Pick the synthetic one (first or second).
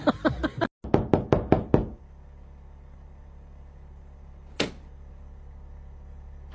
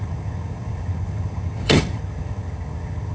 second